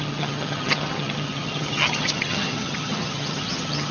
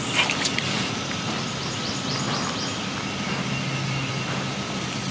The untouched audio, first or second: second